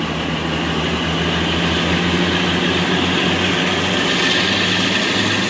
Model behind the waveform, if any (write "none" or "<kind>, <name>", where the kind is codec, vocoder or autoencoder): none